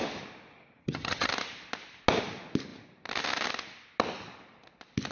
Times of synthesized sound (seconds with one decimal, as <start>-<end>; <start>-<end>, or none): 0.8-1.3